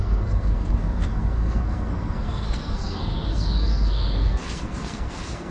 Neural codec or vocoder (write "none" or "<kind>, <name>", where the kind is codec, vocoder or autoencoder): codec, SNAC